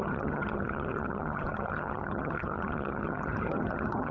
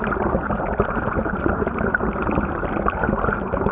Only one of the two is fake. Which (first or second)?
first